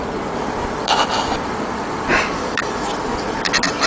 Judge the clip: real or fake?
real